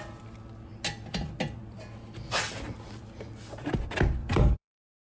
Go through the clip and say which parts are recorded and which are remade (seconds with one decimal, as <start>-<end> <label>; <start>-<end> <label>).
0.0-4.2 recorded; 4.2-5.1 remade